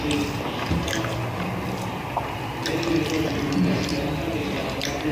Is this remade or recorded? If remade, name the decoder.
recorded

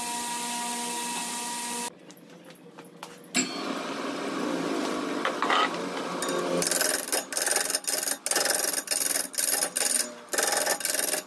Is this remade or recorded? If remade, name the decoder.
recorded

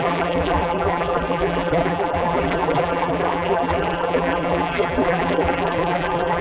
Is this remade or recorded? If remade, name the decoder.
remade, vocoder, BigVGAN v2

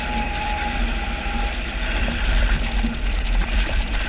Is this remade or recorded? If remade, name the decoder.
remade, vocoder, BigVGAN v2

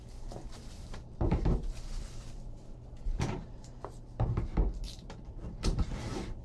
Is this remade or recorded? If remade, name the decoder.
remade, vocoder, BigVGAN v2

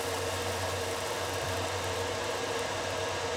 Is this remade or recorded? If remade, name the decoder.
recorded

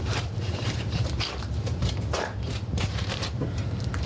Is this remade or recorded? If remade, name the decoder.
remade, vocoder, BigVGAN v2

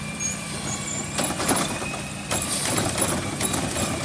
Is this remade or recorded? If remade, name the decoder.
remade, vocoder, BigVGAN v2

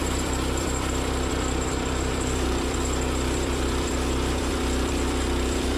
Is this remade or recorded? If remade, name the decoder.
remade, vocoder, BigVGAN v2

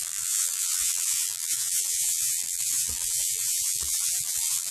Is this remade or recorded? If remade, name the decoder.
remade, vocoder, BigVGAN v2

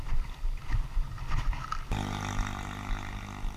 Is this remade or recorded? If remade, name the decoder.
remade, vocoder, BigVGAN v2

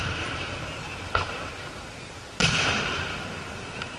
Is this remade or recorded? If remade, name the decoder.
recorded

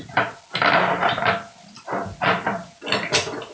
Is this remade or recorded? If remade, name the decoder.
recorded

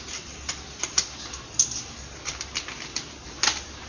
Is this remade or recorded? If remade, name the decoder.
recorded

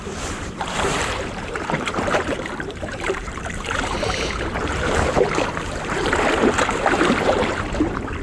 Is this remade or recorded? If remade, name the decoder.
remade, vocoder, BigVGAN v2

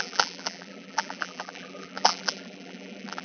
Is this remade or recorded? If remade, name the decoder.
remade, vocoder, BigVGAN v2